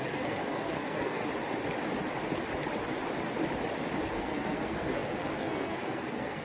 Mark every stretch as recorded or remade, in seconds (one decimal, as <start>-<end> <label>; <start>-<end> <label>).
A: 0.0-1.2 remade; 1.2-4.1 recorded; 4.1-6.4 remade